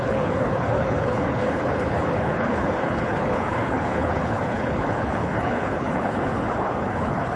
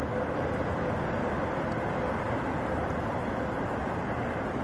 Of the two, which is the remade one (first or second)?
first